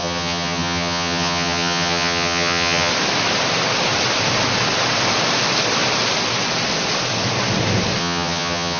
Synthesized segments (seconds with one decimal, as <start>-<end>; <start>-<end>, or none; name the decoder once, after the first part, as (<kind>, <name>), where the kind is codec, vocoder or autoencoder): 0.0-2.9 (vocoder, HiFi-GAN); 8.0-8.8